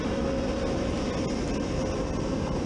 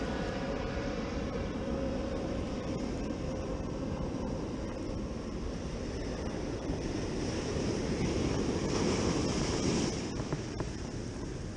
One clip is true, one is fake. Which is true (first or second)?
first